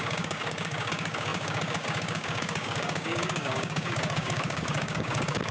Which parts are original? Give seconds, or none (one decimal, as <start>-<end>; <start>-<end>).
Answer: none